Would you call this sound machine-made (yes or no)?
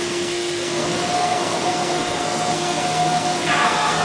yes